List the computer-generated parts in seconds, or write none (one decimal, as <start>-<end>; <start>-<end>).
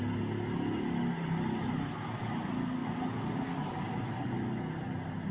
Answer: none